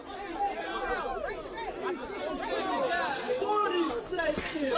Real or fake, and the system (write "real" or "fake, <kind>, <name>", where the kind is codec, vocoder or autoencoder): real